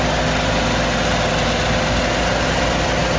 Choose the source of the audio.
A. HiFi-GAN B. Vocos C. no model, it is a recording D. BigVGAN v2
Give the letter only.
C